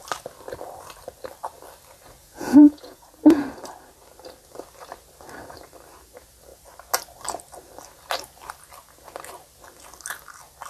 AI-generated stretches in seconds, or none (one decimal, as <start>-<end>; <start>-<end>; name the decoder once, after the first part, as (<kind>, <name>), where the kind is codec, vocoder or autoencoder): 2.2-3.4 (vocoder, Vocos)